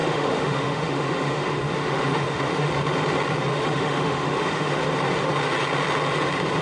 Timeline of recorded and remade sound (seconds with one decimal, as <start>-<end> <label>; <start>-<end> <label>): 0.0-2.7 remade; 2.7-3.5 recorded; 3.5-4.8 remade; 4.8-6.6 recorded